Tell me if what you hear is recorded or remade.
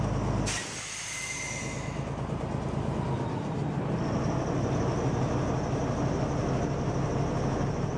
recorded